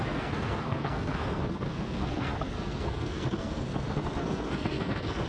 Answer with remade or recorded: remade